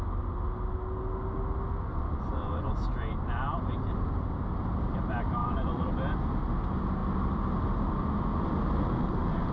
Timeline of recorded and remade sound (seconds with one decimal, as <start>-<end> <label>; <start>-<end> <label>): 0.0-1.9 recorded; 1.9-2.8 remade; 2.8-5.4 recorded; 5.4-5.9 remade; 5.9-9.5 recorded